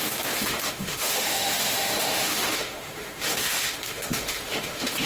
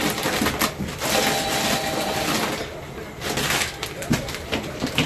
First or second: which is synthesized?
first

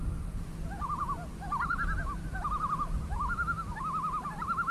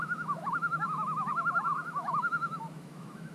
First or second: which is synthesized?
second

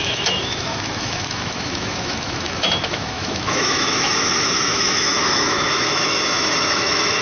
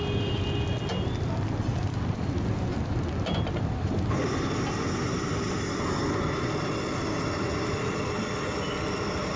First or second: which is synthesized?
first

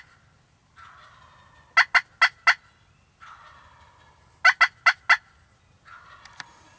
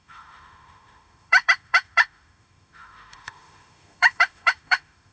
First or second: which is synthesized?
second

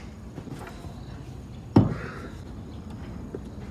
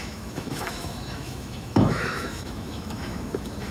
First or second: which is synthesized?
second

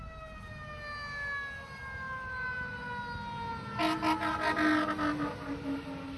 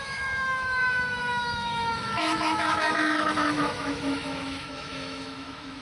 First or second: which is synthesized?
second